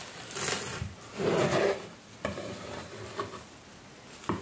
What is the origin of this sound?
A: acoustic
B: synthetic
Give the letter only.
A